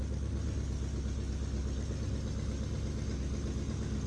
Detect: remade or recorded recorded